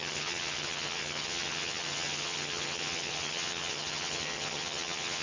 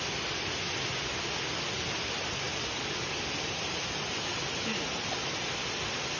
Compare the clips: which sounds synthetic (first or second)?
first